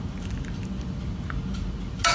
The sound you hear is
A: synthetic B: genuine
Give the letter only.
B